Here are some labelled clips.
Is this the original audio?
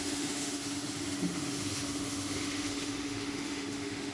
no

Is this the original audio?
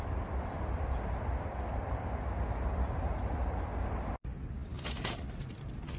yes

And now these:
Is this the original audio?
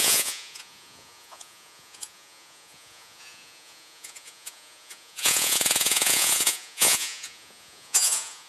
no